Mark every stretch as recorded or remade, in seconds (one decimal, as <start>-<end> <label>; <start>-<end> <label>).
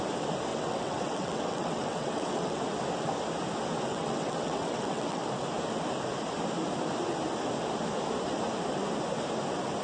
0.0-0.5 recorded; 0.5-2.6 remade; 2.6-3.9 recorded; 3.9-5.2 remade; 5.2-9.8 recorded